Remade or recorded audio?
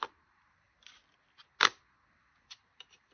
recorded